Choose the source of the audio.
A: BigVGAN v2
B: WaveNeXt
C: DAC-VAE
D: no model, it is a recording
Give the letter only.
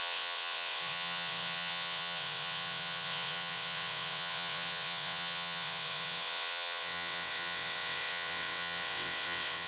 B